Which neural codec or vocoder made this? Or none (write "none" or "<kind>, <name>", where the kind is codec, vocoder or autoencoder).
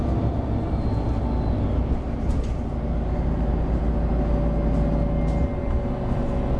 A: none